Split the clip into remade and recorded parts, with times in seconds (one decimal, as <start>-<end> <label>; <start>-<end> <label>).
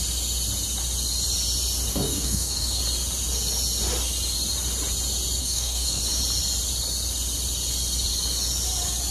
0.0-1.9 recorded; 1.9-2.8 remade; 2.8-5.4 recorded; 5.4-6.0 remade; 6.0-9.1 recorded